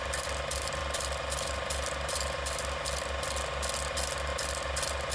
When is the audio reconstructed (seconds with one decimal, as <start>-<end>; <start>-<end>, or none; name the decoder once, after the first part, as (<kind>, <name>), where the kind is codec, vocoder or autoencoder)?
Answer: none